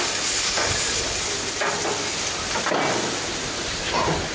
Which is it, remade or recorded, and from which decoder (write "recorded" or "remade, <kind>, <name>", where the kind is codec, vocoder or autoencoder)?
recorded